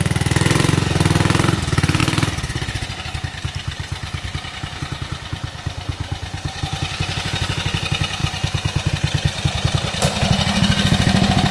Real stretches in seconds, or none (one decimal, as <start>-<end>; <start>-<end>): 0.0-11.5